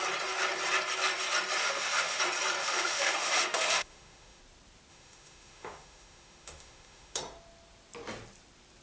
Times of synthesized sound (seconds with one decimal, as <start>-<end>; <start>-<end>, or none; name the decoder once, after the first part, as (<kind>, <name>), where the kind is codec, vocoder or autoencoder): 1.6-2.2 (autoencoder, DAC-VAE); 2.6-4.4; 4.9-7.2